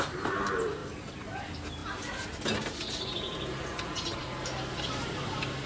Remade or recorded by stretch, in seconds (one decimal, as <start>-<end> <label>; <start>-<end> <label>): 0.0-1.8 remade; 1.8-3.8 recorded; 3.8-4.2 remade; 4.2-4.9 recorded; 4.9-5.7 remade